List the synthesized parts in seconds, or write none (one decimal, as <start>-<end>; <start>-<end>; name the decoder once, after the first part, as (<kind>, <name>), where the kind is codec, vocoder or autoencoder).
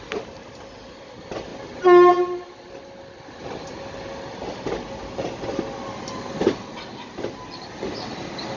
none